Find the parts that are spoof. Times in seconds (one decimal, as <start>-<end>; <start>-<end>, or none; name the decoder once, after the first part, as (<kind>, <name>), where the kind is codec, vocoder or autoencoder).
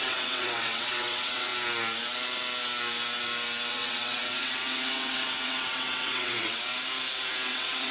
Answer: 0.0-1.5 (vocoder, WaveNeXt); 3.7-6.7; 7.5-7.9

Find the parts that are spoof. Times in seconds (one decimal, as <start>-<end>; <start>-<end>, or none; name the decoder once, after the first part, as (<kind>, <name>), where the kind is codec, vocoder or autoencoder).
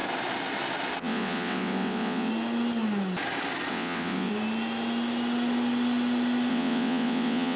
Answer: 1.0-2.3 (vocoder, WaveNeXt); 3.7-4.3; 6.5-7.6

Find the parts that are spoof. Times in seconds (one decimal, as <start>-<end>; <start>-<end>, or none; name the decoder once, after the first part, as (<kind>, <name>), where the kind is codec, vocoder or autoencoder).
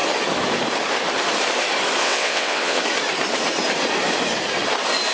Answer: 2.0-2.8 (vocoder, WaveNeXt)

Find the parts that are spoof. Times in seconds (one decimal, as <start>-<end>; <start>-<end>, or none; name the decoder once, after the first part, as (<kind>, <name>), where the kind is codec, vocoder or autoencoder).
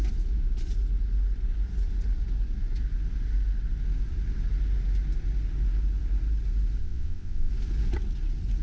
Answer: 6.8-7.5 (vocoder, WaveNeXt)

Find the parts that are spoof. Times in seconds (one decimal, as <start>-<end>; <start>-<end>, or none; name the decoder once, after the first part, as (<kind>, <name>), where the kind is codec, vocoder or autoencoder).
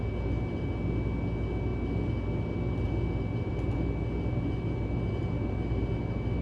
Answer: none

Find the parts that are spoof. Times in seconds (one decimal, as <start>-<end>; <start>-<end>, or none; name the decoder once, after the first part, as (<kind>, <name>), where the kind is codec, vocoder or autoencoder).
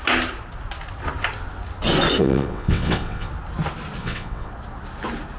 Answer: 2.2-3.3 (vocoder, WaveNeXt); 4.0-4.5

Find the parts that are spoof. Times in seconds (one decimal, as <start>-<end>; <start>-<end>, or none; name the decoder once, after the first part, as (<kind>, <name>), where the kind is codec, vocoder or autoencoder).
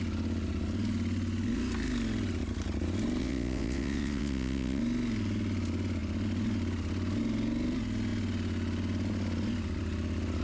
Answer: 3.2-4.8 (vocoder, WaveNeXt)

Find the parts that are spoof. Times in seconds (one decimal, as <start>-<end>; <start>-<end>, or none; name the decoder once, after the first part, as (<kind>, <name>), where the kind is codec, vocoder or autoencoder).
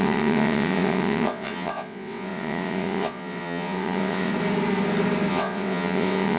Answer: 0.0-4.3 (vocoder, WaveNeXt); 5.3-6.4